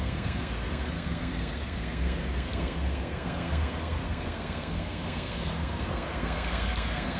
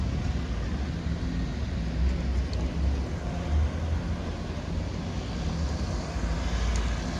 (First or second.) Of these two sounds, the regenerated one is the first